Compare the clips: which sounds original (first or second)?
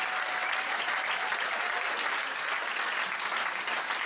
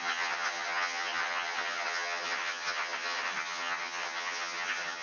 first